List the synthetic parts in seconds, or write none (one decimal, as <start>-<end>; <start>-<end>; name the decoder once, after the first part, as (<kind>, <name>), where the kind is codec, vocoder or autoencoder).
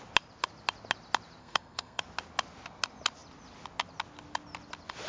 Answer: 1.4-2.0 (codec, SNAC)